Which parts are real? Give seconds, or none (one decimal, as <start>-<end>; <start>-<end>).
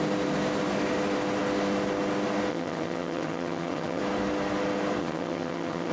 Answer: 0.0-2.5; 4.0-5.0